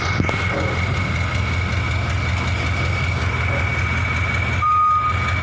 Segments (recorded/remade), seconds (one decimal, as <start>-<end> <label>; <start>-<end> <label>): 0.0-5.4 recorded